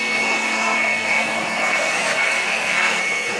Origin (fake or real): fake